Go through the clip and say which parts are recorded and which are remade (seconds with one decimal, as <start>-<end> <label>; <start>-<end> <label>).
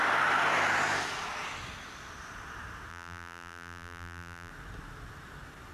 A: 0.0-2.9 recorded; 2.9-4.5 remade; 4.5-5.7 recorded